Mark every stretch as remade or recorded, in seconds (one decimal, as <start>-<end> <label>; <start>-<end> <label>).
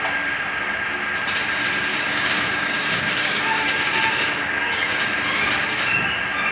0.0-1.9 recorded; 1.9-5.0 remade; 5.0-6.5 recorded